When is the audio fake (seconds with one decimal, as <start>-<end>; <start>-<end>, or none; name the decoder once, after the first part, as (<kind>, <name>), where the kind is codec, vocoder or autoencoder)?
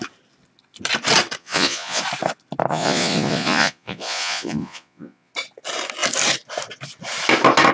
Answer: 1.4-2.0 (vocoder, Vocos); 2.7-5.3